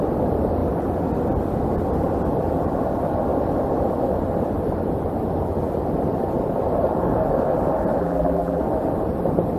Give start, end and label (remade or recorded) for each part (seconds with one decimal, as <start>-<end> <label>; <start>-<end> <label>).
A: 0.0-8.0 recorded; 8.0-8.6 remade; 8.6-9.6 recorded